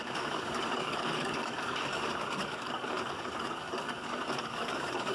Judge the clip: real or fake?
fake